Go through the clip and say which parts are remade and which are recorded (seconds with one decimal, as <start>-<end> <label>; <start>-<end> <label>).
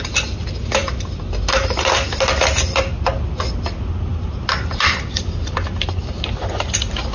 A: 0.0-7.1 recorded